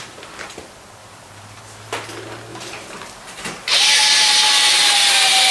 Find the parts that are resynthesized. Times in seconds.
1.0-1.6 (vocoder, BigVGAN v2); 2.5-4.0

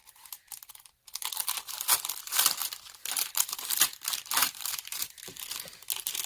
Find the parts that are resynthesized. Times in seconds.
0.0-0.7 (vocoder, BigVGAN v2); 2.6-3.8; 4.4-5.3

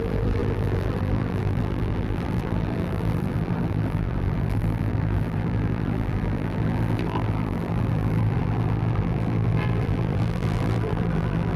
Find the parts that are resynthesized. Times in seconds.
0.0-11.6 (vocoder, BigVGAN v2)